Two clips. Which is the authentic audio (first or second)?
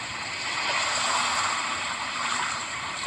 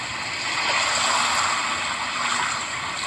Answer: second